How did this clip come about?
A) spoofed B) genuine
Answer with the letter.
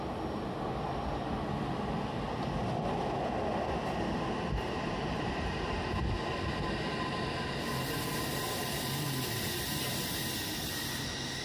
B